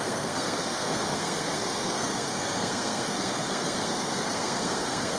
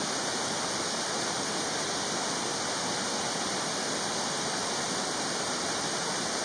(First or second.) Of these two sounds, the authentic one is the second